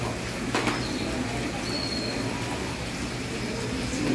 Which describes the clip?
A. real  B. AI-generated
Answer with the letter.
A